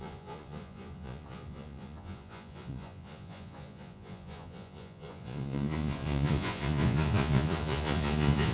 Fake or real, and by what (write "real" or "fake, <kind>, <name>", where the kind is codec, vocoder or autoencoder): fake, vocoder, Vocos